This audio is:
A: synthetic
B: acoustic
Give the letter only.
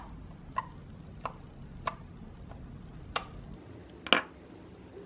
B